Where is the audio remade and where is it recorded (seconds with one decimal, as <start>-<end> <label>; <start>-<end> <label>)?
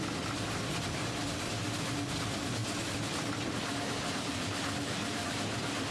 0.0-2.6 recorded; 2.6-5.9 remade